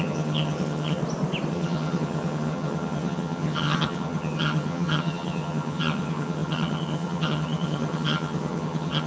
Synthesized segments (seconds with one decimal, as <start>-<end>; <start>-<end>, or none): 0.0-1.0; 1.5-9.1